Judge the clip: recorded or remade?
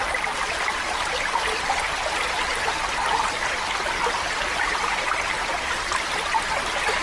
recorded